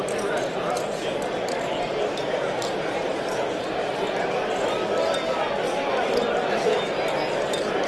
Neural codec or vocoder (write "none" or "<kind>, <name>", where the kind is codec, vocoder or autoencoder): none